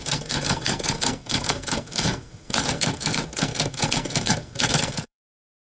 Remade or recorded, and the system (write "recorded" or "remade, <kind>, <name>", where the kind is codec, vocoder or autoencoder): remade, codec, SNAC